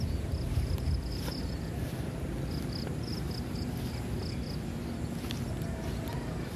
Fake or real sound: real